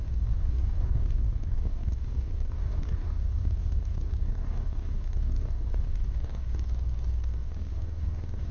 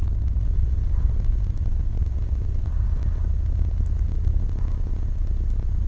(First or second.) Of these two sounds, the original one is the second